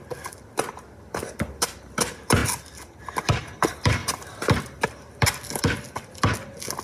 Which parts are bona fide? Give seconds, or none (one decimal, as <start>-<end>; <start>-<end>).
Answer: 0.0-6.8